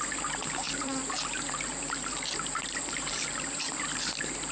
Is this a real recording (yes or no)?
yes